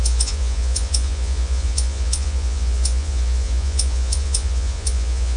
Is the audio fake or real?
fake